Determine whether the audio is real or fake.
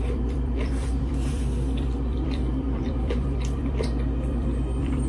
fake